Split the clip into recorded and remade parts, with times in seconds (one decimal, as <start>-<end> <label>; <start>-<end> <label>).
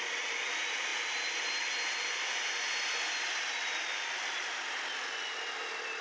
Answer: 0.0-6.0 recorded